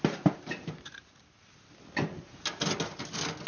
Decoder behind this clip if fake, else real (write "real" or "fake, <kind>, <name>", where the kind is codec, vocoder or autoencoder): real